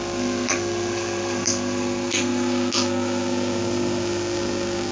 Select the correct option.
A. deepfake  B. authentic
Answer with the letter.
A